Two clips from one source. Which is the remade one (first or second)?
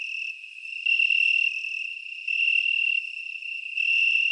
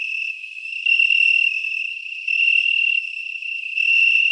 second